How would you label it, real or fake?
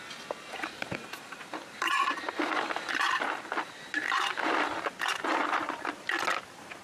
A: real